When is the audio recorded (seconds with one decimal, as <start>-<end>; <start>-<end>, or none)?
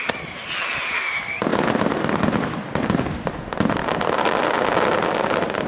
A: 0.0-3.8; 4.3-5.7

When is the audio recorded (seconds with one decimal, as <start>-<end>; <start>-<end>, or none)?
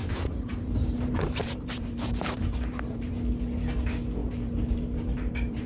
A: 3.1-4.2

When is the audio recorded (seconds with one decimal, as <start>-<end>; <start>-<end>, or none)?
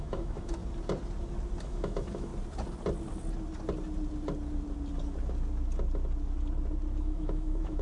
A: 0.6-1.6; 2.3-7.0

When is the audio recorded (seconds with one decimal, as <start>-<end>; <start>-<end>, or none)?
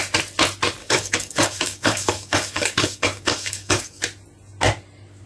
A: 0.0-0.8; 4.0-5.3